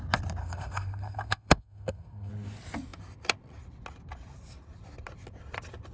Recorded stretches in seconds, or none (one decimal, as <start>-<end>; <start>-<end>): 0.0-0.4; 2.3-5.9